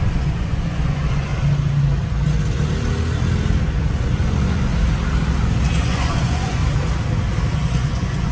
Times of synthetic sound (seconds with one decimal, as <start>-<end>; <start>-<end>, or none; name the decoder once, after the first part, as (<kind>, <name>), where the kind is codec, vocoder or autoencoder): 0.0-1.3 (vocoder, Vocos); 4.0-4.7; 5.8-6.6; 7.5-8.3